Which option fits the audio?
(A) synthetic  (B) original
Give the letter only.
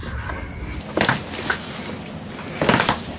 B